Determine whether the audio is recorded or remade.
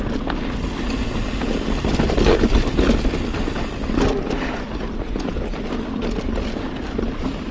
recorded